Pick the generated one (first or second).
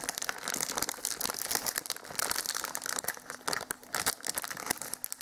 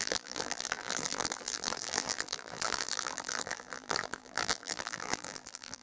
second